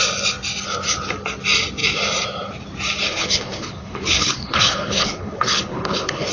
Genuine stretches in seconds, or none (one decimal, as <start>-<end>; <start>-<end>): 0.0-3.0